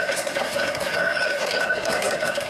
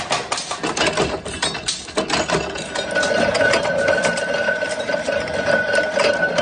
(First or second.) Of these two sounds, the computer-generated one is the first